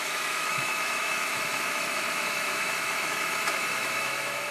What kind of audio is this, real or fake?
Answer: fake